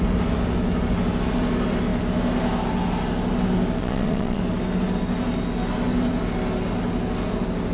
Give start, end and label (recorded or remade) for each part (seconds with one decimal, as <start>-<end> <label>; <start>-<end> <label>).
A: 0.0-3.8 recorded; 3.8-4.4 remade; 4.4-7.7 recorded